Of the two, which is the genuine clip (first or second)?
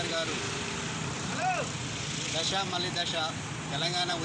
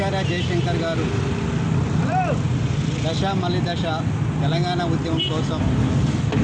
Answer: second